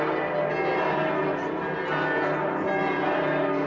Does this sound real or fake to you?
real